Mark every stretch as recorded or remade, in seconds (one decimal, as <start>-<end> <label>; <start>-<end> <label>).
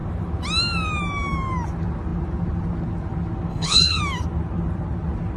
0.0-3.5 recorded; 3.5-4.0 remade; 4.0-5.4 recorded